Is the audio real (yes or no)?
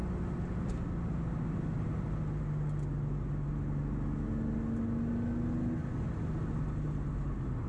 yes